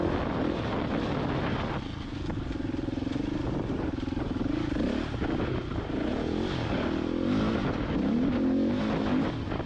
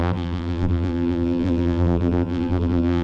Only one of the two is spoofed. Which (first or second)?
second